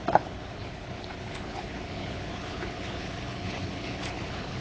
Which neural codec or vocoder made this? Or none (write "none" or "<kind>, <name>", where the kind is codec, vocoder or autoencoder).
codec, HILCodec